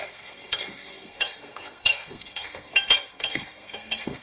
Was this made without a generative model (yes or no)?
no